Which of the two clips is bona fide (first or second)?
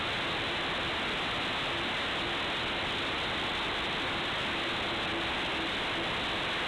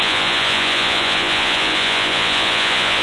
first